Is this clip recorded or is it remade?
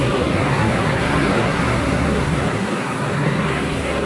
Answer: remade